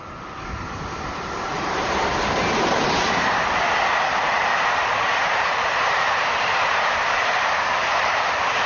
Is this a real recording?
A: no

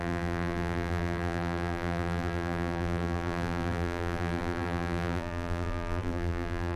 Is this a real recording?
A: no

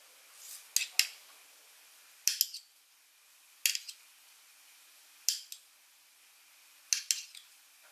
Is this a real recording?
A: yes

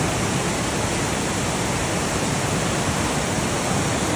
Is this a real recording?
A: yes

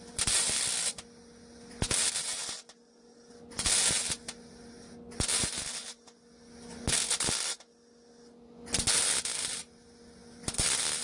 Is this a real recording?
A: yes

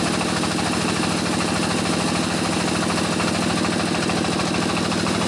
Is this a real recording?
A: yes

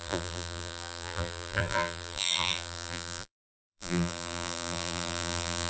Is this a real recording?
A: no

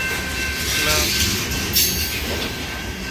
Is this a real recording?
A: yes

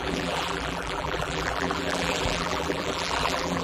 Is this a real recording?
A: no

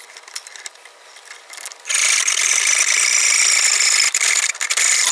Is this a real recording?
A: no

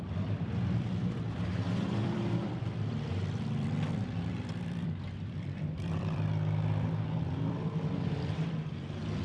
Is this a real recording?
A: no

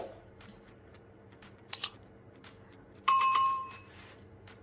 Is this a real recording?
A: no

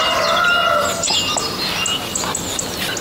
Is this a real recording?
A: yes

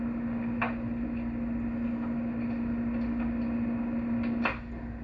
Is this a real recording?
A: yes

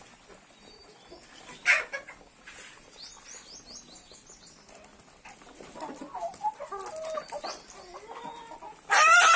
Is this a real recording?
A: yes